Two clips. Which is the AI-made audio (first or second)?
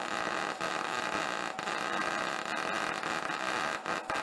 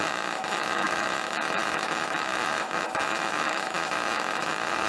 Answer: second